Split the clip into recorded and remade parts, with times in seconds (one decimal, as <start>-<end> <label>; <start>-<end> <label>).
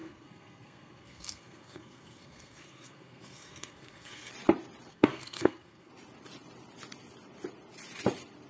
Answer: 0.0-4.3 remade; 4.3-4.9 recorded; 4.9-5.9 remade; 5.9-8.5 recorded